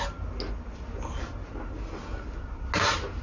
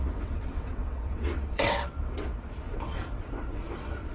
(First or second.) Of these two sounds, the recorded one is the first